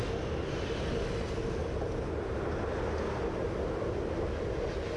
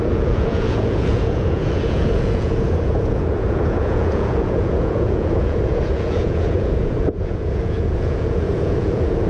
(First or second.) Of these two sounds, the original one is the first